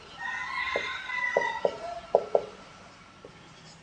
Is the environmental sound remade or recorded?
recorded